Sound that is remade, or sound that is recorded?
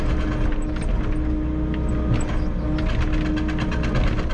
recorded